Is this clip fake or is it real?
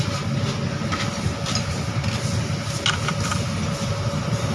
real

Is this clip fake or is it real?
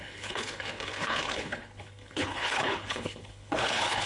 fake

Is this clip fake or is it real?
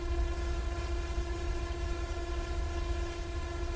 fake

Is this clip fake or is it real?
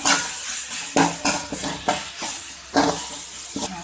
real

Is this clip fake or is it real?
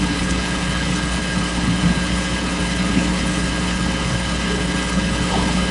fake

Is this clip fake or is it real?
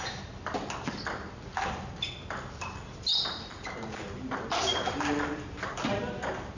real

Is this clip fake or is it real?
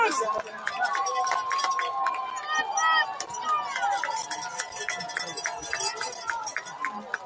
real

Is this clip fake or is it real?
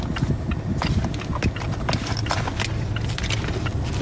real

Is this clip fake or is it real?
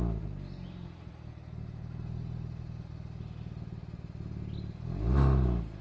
real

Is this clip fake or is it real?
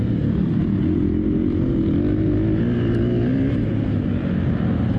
real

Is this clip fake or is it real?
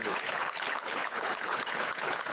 fake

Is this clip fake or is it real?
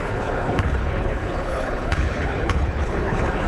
fake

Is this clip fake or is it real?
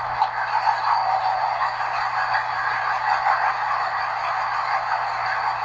real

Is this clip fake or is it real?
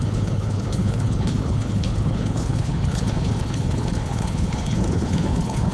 fake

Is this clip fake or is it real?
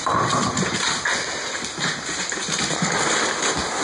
real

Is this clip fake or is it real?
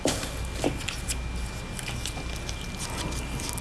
real